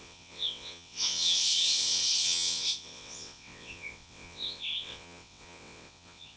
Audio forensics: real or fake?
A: fake